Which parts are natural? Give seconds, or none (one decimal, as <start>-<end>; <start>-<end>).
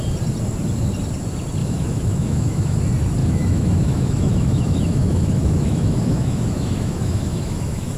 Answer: 0.0-1.6; 2.8-3.2